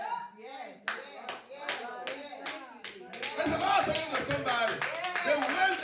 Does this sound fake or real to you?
real